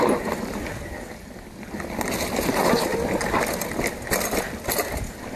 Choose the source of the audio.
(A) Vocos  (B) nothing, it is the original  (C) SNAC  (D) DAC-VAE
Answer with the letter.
B